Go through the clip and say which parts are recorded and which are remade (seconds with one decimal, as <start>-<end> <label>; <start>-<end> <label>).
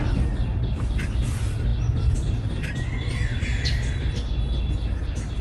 0.0-5.4 recorded